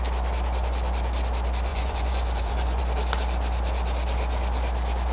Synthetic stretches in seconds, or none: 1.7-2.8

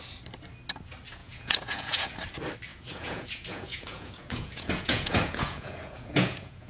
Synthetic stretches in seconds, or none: 1.2-2.1; 2.7-6.7